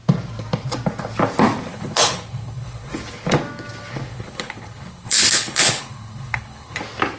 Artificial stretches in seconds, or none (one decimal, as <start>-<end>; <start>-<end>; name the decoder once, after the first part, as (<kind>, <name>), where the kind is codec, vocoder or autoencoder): 1.7-2.9 (codec, HILCodec); 4.1-6.8